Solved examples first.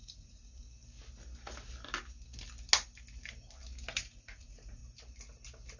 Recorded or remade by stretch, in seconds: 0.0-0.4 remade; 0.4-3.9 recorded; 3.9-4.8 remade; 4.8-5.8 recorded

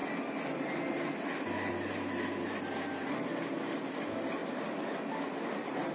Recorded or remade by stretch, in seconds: 0.0-5.9 recorded

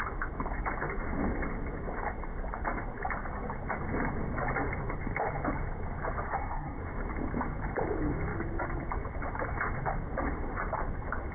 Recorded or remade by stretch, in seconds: 0.0-6.3 recorded; 6.3-6.8 remade; 6.8-11.3 recorded